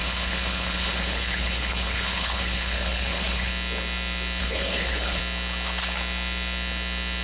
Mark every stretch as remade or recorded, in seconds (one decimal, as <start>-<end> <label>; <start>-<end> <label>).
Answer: 0.0-3.5 remade; 3.5-4.4 recorded; 4.4-5.2 remade; 5.2-7.2 recorded